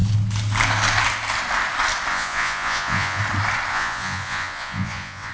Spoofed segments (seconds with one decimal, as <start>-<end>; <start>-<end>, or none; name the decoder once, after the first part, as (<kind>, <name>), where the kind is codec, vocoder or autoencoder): 2.1-3.2 (vocoder, Vocos); 3.7-5.3